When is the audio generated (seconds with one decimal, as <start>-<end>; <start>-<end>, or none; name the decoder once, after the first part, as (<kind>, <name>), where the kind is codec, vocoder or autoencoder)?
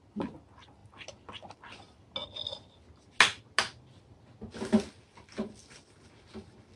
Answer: none